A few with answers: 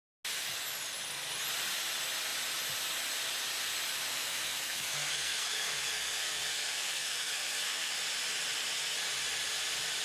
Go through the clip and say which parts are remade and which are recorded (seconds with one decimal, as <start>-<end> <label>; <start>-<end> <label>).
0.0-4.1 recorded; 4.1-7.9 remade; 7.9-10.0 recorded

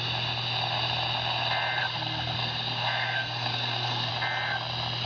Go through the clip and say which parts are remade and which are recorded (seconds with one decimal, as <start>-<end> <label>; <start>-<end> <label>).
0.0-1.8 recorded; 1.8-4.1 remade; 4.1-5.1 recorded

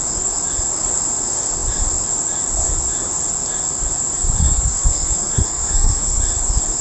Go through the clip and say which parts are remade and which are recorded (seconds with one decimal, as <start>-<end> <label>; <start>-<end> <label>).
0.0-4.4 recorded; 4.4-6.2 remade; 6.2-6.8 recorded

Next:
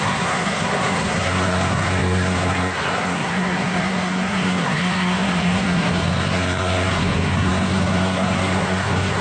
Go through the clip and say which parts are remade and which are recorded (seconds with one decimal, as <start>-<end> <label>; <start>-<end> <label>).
0.0-9.2 remade

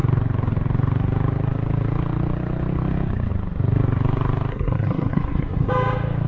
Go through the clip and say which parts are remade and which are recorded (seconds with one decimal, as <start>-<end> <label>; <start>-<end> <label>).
0.0-4.5 recorded; 4.5-5.7 remade; 5.7-6.3 recorded

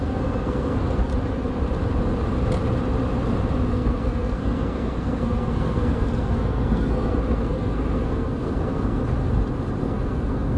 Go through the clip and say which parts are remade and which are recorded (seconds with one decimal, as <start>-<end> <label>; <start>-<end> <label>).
0.0-1.1 remade; 1.1-3.7 recorded; 3.7-9.0 remade; 9.0-9.8 recorded; 9.8-10.6 remade